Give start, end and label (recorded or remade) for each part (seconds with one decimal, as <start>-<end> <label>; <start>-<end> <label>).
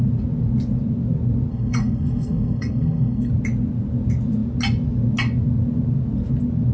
0.0-1.5 recorded; 1.5-3.3 remade; 3.3-6.7 recorded